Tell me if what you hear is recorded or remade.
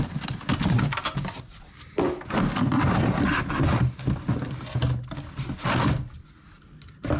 recorded